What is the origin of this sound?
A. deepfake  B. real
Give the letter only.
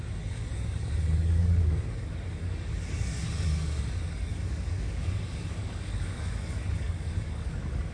A